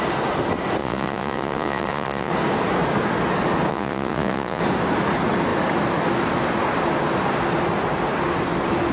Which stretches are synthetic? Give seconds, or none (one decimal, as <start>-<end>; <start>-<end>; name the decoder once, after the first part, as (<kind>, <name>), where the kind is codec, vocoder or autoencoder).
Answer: 0.8-2.3 (vocoder, Vocos); 3.7-4.6